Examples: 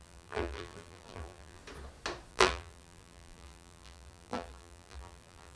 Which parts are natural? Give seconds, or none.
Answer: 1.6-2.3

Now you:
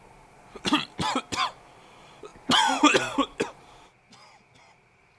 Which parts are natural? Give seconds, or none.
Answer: 0.0-5.2

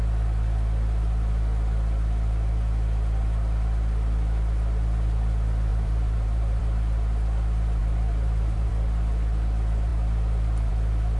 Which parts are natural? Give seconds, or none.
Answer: 0.0-5.7; 6.6-7.8; 8.7-11.2

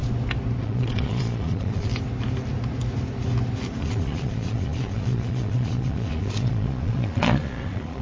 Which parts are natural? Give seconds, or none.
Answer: 0.0-0.6; 1.9-3.8

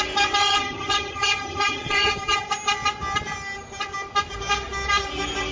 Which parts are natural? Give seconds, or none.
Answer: 0.0-0.4; 2.5-5.5